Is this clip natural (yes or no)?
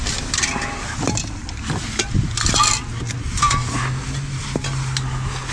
yes